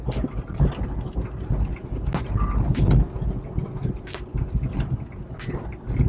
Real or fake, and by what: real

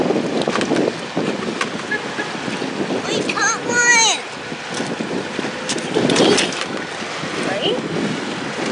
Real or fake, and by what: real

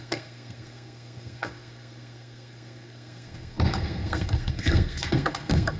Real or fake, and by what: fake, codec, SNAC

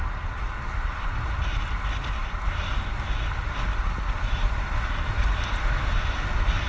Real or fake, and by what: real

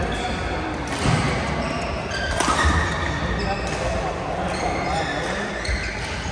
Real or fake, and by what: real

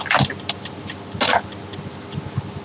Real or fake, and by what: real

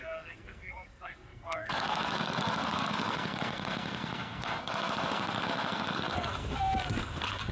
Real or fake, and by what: fake, codec, SNAC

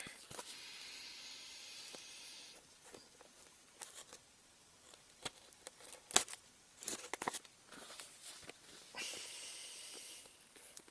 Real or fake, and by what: real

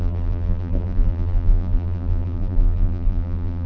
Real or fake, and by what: fake, vocoder, BigVGAN v2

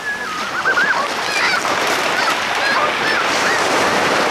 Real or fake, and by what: real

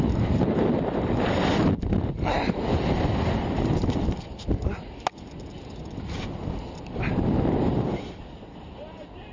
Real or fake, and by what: real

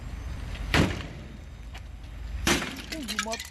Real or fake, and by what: fake, vocoder, BigVGAN v2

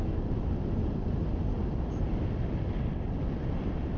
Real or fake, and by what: real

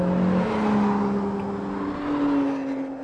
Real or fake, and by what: real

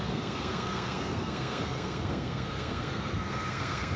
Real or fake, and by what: fake, codec, SNAC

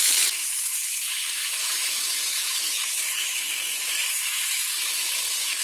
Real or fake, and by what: fake, autoencoder, DAC-VAE